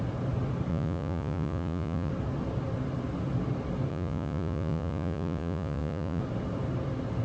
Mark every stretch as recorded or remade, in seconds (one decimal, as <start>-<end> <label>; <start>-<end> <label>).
0.0-0.7 recorded; 0.7-2.1 remade; 2.1-3.9 recorded; 3.9-6.2 remade; 6.2-7.2 recorded